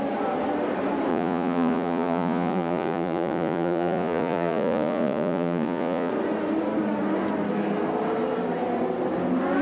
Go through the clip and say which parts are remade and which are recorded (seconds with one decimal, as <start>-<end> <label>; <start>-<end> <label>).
0.0-1.1 recorded; 1.1-6.1 remade; 6.1-9.6 recorded